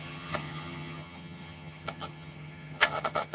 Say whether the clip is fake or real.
fake